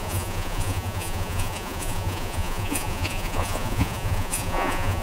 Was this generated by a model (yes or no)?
yes